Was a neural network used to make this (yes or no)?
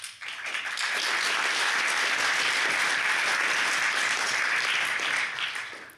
no